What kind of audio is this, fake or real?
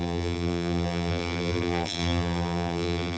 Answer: fake